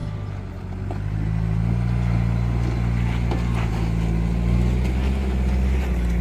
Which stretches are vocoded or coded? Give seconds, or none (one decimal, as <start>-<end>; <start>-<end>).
none